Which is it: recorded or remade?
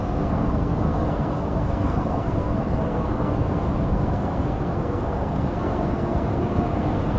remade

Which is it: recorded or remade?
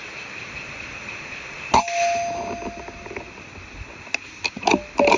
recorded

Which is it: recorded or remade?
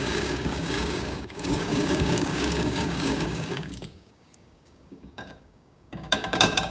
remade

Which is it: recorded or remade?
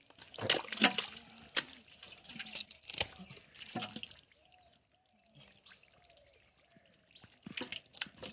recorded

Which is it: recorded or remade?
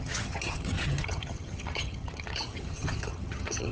remade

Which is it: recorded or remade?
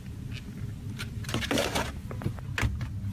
recorded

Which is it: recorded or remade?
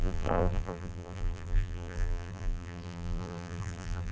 remade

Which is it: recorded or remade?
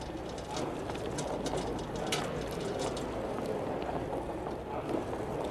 recorded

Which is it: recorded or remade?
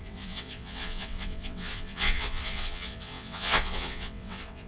remade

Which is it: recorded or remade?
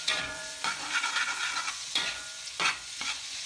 remade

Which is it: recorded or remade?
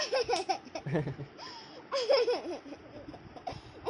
recorded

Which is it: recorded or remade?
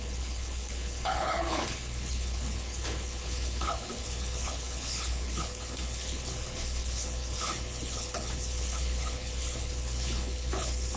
remade